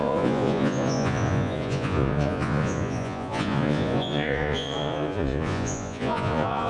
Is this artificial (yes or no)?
yes